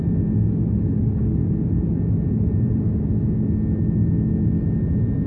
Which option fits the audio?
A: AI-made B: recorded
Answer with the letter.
B